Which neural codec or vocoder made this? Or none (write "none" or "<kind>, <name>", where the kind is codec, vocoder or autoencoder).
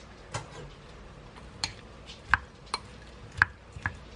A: none